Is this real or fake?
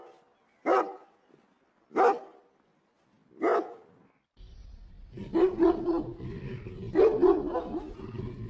real